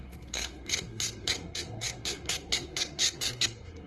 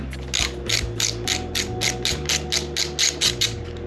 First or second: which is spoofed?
first